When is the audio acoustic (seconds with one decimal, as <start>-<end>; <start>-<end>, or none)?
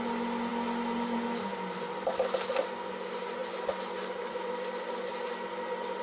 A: 0.0-6.0